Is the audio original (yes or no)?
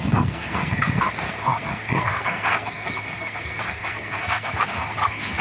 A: no